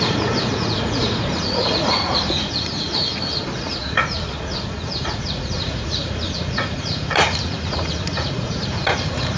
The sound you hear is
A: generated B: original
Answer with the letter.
A